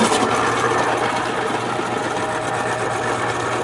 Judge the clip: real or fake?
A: real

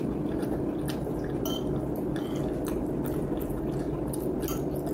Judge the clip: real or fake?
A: real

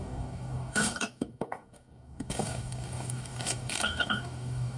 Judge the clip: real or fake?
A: fake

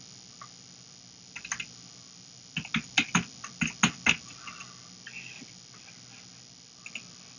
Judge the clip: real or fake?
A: real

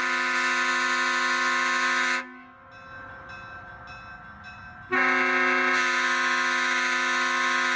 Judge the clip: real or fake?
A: real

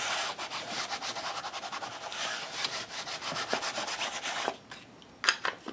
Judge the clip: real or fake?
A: real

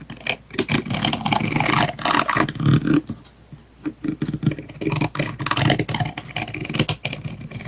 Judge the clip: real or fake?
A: real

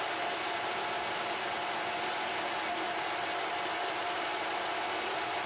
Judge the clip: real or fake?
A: real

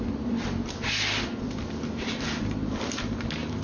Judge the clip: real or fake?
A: real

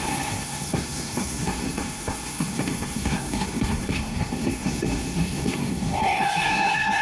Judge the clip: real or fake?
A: fake